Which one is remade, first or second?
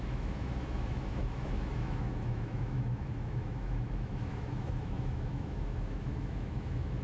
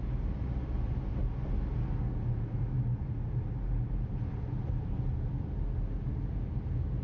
first